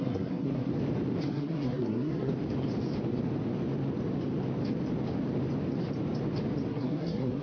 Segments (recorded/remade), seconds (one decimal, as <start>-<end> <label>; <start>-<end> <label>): 0.0-0.7 remade; 0.7-1.2 recorded; 1.2-2.3 remade; 2.3-6.7 recorded; 6.7-7.4 remade